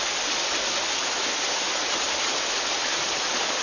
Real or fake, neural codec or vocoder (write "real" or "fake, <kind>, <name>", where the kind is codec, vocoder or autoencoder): real